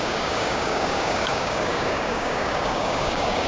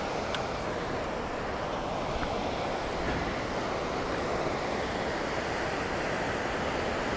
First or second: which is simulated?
first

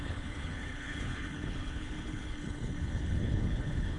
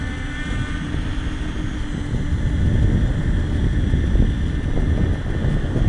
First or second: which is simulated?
first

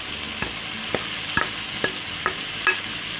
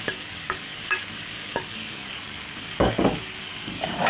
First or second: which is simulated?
second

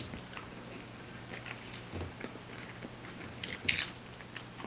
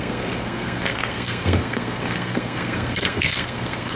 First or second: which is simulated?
second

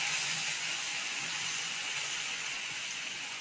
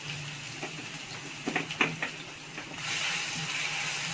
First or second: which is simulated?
first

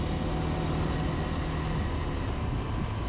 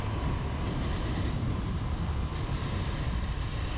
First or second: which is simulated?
second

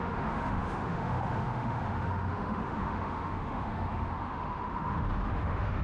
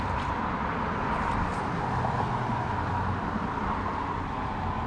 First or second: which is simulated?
first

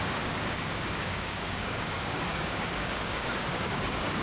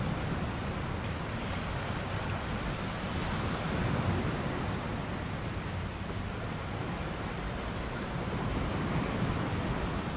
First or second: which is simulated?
first